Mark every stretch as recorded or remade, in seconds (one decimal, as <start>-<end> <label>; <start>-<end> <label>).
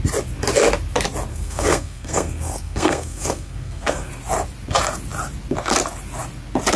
0.0-1.3 recorded; 1.3-4.1 remade; 4.1-6.8 recorded